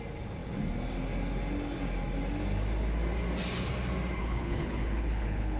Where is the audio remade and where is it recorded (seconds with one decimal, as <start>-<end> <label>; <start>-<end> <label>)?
0.0-4.2 recorded; 4.2-5.6 remade